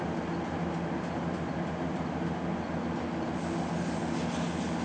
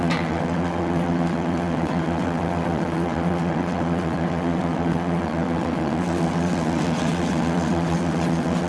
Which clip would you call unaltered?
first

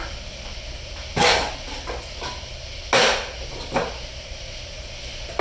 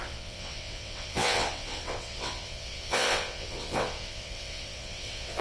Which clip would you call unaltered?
first